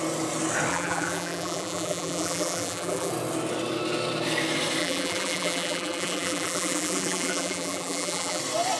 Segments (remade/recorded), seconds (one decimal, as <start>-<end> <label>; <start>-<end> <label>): 0.0-0.7 recorded; 0.7-3.1 remade; 3.1-4.8 recorded; 4.8-8.4 remade; 8.4-8.8 recorded